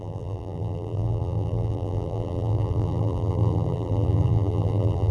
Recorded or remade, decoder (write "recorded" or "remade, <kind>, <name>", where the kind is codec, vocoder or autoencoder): remade, vocoder, BigVGAN v2